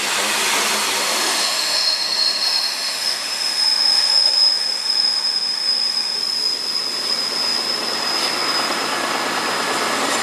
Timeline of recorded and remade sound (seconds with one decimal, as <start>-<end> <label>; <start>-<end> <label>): 0.0-1.0 recorded; 1.0-6.2 remade; 6.2-10.2 recorded